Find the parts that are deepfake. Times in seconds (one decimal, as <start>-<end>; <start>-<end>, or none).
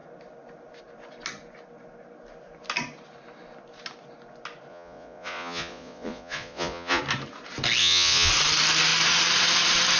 4.7-7.0; 7.8-8.3